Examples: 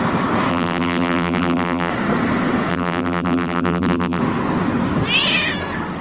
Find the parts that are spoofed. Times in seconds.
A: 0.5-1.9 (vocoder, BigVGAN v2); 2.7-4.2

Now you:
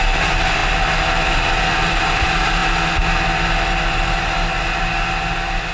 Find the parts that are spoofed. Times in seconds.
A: none